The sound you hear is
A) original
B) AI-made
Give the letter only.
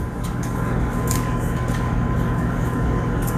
B